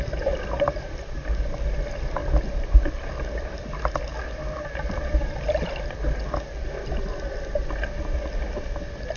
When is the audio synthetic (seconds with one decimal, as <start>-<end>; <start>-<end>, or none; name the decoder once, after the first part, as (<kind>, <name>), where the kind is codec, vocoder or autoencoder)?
none